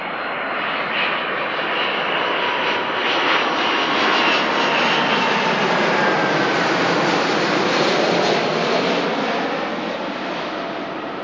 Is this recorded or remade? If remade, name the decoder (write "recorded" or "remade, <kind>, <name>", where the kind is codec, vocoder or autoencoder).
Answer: recorded